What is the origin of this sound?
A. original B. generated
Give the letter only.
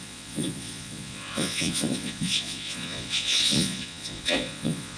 B